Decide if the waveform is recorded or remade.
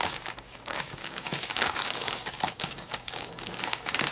remade